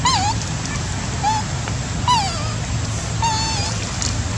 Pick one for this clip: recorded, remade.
recorded